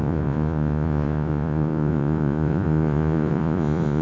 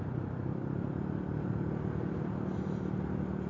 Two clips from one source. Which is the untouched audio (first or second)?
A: second